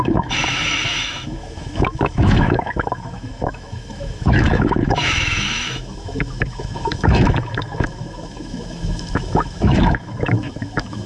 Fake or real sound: fake